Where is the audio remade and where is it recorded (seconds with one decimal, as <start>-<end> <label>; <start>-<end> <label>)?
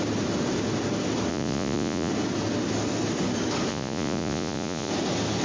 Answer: 0.0-1.3 recorded; 1.3-2.1 remade; 2.1-3.7 recorded; 3.7-4.9 remade; 4.9-5.4 recorded